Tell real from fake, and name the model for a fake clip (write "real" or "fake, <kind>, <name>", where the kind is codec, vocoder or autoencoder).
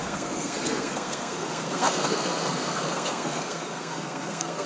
fake, codec, SNAC